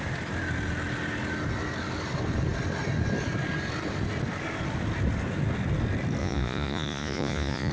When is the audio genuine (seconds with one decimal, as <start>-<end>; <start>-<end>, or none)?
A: 0.0-6.2